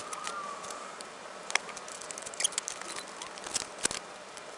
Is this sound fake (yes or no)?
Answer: no